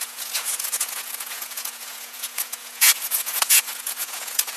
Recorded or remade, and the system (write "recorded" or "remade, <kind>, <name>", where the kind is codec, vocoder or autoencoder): remade, vocoder, Vocos